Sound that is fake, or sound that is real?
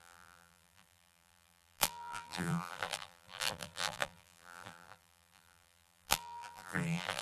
fake